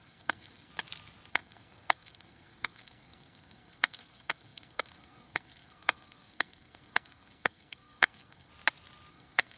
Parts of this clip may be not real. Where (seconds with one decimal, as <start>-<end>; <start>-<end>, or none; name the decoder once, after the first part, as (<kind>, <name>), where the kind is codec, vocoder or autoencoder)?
0.0-0.7 (codec, SNAC); 1.3-8.5; 9.1-9.6